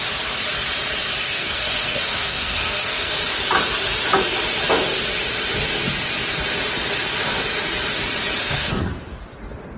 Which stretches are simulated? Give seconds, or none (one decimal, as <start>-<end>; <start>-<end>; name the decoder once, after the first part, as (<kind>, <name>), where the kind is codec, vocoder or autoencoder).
1.2-3.1 (codec, SNAC); 8.4-8.9